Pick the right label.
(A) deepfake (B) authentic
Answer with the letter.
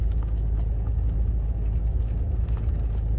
B